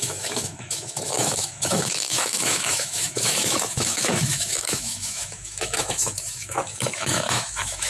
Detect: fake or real fake